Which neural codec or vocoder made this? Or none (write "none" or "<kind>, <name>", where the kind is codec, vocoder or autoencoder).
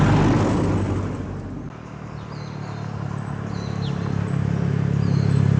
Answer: none